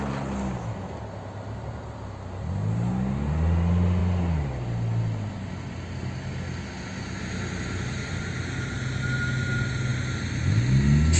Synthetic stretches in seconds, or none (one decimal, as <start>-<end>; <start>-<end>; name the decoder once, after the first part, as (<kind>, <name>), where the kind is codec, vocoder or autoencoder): none